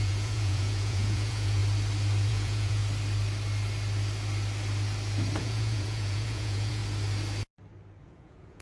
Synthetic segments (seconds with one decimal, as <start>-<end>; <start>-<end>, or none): 0.0-1.6; 2.3-2.8; 5.4-6.8; 8.0-8.6